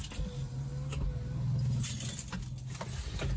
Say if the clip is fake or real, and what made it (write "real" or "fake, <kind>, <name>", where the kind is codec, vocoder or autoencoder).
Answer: real